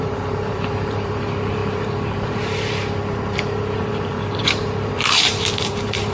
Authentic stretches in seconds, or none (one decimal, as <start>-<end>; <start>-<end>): none